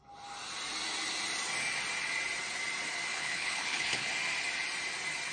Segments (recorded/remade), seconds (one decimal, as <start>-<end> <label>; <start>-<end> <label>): 0.0-3.1 recorded; 3.1-4.1 remade; 4.1-5.3 recorded